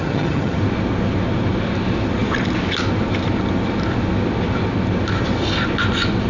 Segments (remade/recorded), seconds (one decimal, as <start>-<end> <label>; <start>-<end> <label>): 0.0-0.6 remade; 0.6-6.3 recorded